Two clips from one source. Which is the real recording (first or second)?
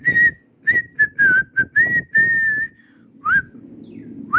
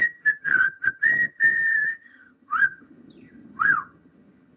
first